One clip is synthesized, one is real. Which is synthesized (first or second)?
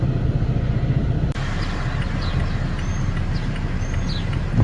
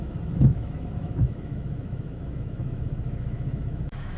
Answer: second